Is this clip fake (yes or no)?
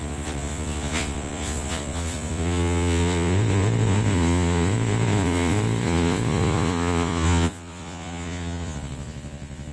yes